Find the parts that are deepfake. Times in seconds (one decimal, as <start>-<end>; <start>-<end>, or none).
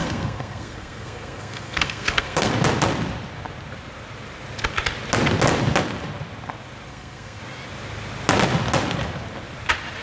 0.0-2.5; 6.9-7.4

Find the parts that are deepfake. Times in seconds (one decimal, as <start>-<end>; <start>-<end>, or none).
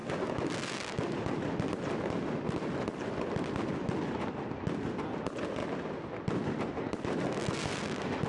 none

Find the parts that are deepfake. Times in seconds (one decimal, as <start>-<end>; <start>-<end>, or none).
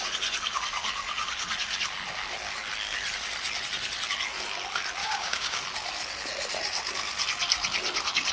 5.0-5.6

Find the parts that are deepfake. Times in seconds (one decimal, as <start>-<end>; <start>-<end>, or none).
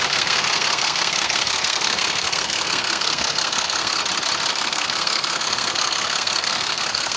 0.0-4.0; 4.5-7.2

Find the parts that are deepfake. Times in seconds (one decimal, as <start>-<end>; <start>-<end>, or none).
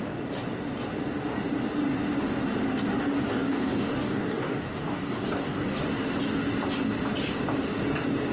3.3-5.8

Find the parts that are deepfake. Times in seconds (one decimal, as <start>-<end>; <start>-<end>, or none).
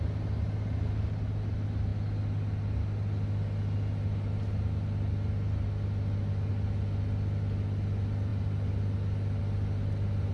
none